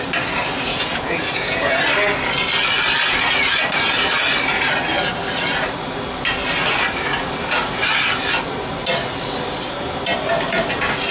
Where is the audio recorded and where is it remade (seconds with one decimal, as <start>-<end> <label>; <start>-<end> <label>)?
0.0-0.7 recorded; 0.7-1.8 remade; 1.8-11.1 recorded